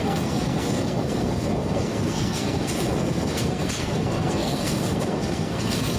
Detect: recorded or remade remade